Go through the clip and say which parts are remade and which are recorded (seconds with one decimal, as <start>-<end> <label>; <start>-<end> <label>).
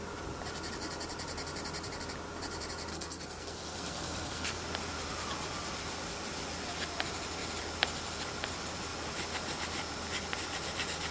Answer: 0.0-2.9 recorded; 2.9-4.6 remade; 4.6-11.1 recorded